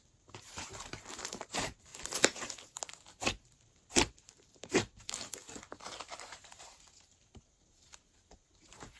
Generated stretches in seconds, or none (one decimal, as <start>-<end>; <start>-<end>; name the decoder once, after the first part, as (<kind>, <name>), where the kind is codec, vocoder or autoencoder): 0.0-1.9 (vocoder, BigVGAN v2); 3.9-5.4; 6.0-9.0